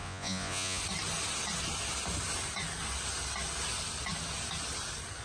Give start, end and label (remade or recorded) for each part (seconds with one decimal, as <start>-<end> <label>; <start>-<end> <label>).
0.0-0.8 remade; 0.8-5.2 recorded